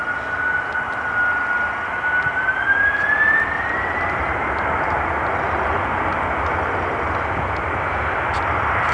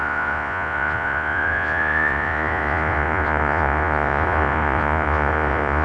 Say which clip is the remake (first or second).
second